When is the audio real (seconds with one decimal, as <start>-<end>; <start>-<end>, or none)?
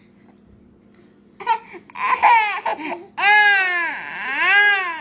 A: 0.0-5.0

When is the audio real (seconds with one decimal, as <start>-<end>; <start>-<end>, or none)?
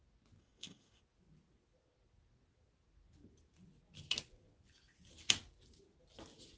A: 0.0-0.4; 1.0-6.6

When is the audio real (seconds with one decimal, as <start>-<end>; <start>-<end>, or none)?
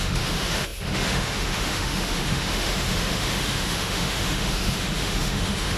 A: none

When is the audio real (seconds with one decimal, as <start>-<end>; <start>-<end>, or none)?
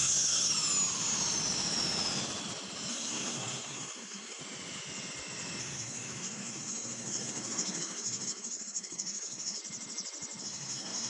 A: 0.5-2.9; 4.4-5.6; 9.6-10.4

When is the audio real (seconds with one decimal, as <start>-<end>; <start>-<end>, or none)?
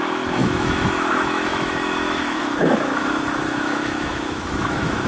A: none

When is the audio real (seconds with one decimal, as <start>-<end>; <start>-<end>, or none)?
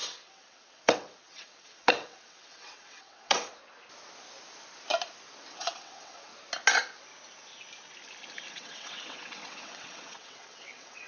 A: 3.5-5.5; 6.3-8.5